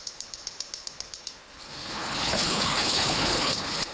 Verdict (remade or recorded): remade